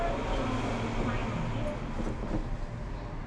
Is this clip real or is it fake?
real